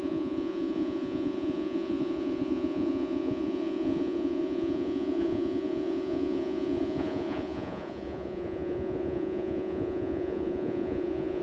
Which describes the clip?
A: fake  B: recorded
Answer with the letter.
A